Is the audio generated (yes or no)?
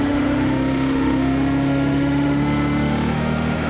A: yes